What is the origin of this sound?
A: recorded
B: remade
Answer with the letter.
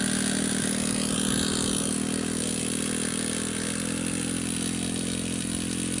A